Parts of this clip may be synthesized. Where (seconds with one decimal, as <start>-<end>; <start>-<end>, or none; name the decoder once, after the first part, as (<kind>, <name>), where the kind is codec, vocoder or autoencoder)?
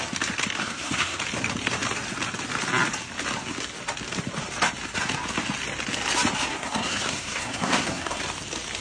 0.6-1.2 (codec, SNAC); 6.5-8.2